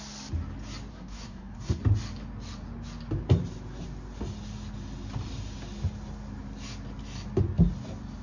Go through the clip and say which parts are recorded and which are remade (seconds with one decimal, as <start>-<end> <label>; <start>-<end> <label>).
0.0-0.9 recorded; 0.9-1.8 remade; 1.8-8.2 recorded